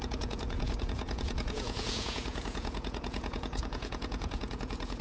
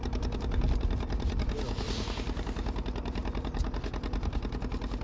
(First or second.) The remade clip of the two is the first